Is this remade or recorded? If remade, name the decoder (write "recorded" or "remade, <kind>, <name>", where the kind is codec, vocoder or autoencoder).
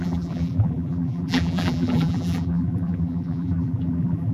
remade, vocoder, BigVGAN v2